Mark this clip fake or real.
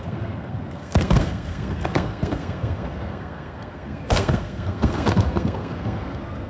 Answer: fake